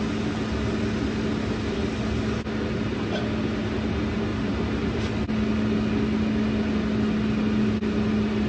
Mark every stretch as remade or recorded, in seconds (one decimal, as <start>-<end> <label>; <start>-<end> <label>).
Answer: 0.0-4.3 recorded; 4.3-5.0 remade; 5.0-8.5 recorded